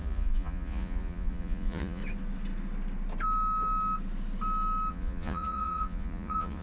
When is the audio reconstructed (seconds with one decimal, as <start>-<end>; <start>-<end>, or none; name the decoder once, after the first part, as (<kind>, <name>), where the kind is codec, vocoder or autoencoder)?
0.0-2.0 (vocoder, Vocos); 4.9-6.6